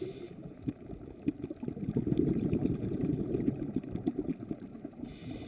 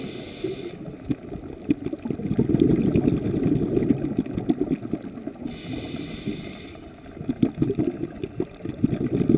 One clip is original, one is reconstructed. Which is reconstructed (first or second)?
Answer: first